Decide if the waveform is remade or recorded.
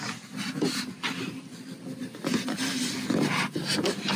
recorded